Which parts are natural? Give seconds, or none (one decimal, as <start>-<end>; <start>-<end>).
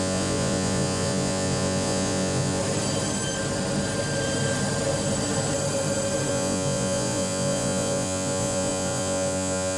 2.6-6.3